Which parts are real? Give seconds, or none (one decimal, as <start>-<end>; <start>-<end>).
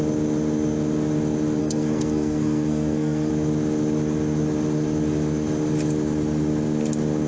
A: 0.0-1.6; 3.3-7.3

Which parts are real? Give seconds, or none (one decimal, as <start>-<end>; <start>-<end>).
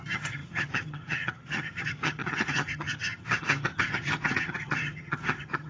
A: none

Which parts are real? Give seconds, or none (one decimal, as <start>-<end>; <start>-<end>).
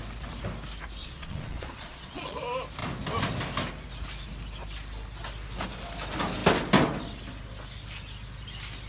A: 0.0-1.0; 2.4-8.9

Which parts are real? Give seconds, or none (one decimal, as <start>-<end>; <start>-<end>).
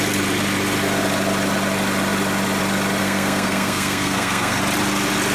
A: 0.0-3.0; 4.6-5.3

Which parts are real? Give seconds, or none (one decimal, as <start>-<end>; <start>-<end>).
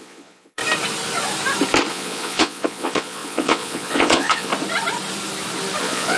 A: 0.6-1.9; 4.5-5.8